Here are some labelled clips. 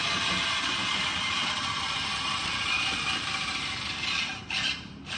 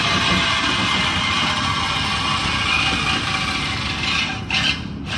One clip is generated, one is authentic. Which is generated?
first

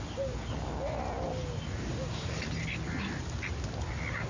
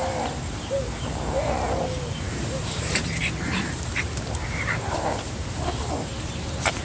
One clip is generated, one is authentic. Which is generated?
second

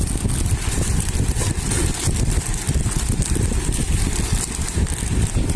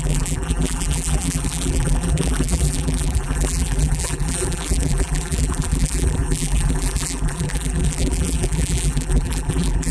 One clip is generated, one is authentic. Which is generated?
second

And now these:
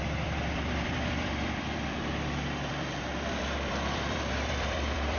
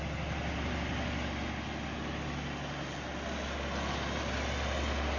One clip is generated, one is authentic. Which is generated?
first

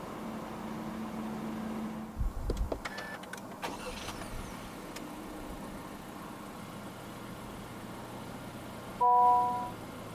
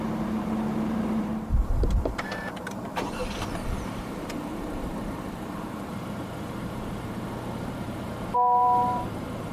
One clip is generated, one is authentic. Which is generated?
second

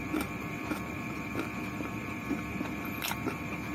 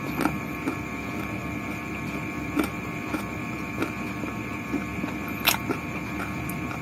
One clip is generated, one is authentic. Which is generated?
first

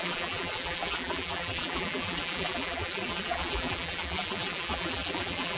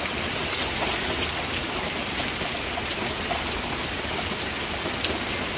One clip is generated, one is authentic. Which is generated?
first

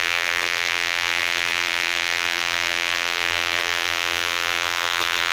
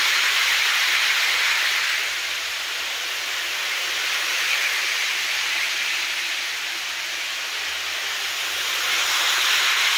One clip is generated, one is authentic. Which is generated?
first